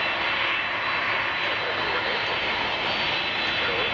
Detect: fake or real real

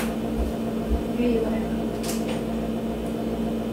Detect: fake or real real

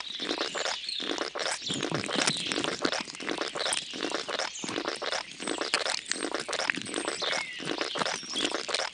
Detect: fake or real real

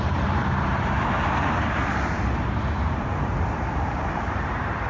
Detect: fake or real fake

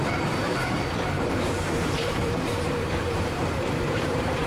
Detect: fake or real fake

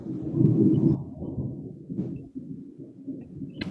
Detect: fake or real real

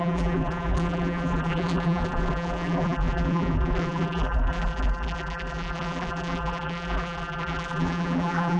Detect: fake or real fake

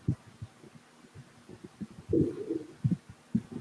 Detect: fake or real real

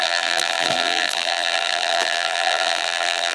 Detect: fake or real fake